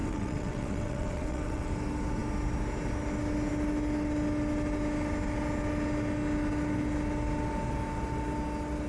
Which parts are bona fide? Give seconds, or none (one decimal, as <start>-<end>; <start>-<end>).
1.7-8.9